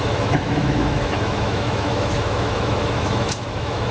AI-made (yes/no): yes